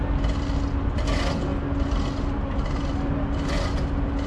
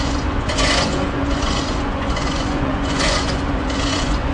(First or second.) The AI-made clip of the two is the second